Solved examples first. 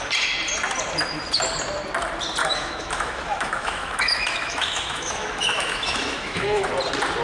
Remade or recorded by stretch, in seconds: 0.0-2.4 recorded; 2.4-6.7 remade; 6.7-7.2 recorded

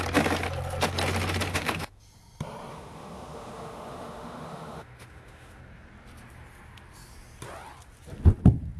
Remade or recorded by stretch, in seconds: 0.0-1.5 recorded; 1.5-2.0 remade; 2.0-2.7 recorded; 2.7-5.6 remade; 5.6-8.8 recorded

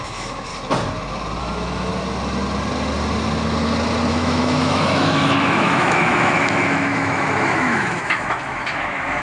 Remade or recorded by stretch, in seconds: 0.0-0.5 remade; 0.5-1.4 recorded; 1.4-1.9 remade; 1.9-4.1 recorded; 4.1-9.2 remade

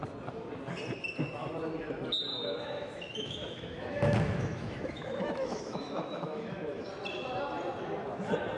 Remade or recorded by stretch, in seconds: 0.0-2.3 recorded; 2.3-6.9 remade; 6.9-8.6 recorded

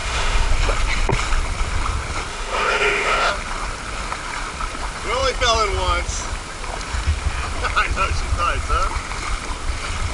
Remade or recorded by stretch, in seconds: 0.0-0.5 remade; 0.5-2.3 recorded; 2.3-3.3 remade; 3.3-10.1 recorded

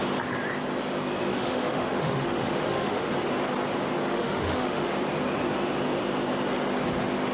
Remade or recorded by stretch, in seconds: 0.0-1.3 recorded; 1.3-3.1 remade; 3.1-4.1 recorded; 4.1-4.9 remade; 4.9-7.3 recorded

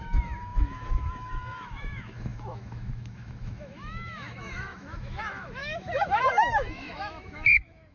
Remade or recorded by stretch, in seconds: 0.0-7.9 remade